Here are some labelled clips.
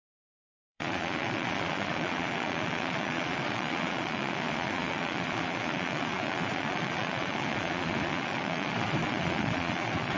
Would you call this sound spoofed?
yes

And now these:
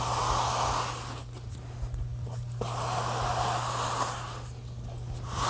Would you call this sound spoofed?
no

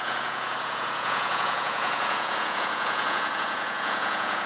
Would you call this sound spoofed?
yes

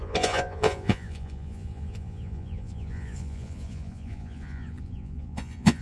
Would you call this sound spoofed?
yes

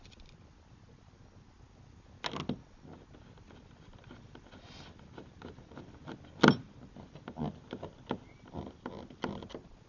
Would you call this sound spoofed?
no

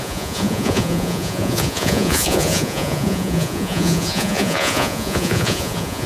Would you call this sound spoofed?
yes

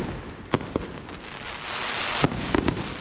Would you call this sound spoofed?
no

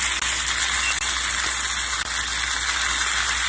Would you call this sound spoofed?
no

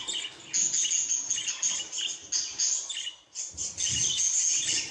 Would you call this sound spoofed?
no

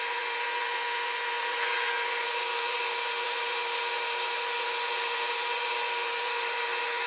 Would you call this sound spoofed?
yes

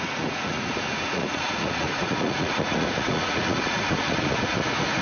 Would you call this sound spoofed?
yes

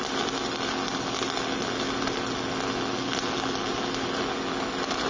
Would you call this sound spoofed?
no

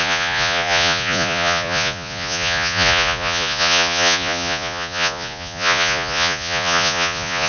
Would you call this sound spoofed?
yes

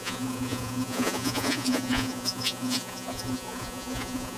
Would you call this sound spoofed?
yes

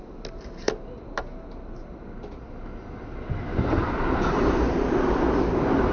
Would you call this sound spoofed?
no